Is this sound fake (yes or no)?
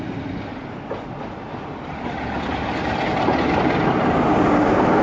no